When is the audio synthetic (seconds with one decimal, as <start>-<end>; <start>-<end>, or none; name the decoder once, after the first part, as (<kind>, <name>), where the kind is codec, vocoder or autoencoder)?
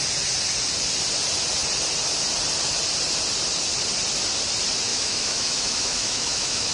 4.9-6.7 (autoencoder, DAC-VAE)